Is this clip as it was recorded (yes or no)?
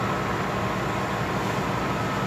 yes